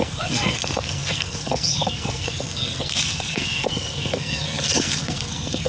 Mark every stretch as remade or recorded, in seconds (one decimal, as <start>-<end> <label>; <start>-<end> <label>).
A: 0.0-5.7 remade